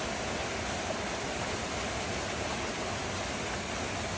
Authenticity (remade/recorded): recorded